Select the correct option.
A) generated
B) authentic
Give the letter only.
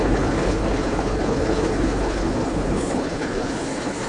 A